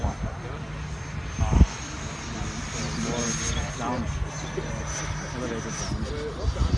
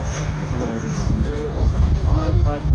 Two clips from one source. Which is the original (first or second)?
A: first